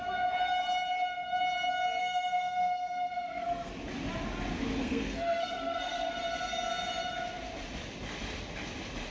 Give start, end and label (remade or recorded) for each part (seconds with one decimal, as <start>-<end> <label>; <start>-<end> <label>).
0.0-2.0 recorded; 2.0-3.7 remade; 3.7-4.8 recorded; 4.8-6.1 remade; 6.1-9.1 recorded